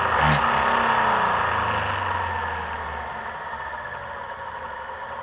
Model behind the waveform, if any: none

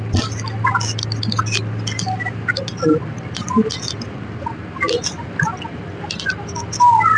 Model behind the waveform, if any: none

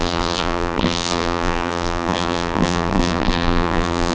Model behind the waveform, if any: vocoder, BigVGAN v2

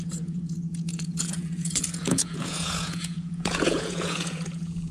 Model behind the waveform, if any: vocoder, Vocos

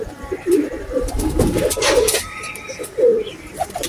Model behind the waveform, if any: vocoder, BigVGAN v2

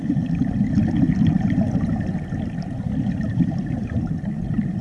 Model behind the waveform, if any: vocoder, BigVGAN v2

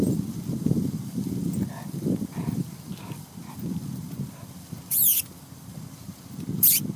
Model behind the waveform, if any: vocoder, BigVGAN v2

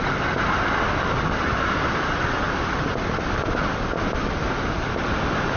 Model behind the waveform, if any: none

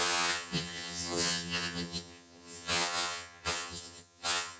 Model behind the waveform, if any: vocoder, HiFi-GAN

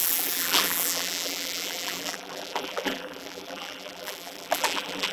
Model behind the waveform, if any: vocoder, BigVGAN v2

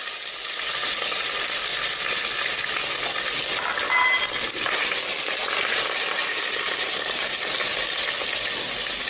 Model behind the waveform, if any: none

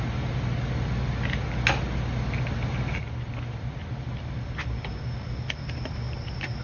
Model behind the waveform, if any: none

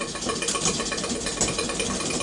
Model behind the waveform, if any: none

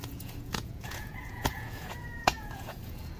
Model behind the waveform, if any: vocoder, Vocos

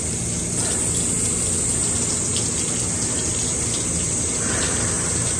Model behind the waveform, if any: none